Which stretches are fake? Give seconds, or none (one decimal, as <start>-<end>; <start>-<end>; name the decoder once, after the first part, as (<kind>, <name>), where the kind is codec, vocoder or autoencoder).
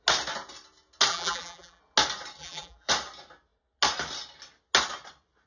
1.1-1.8 (vocoder, BigVGAN v2); 2.4-2.9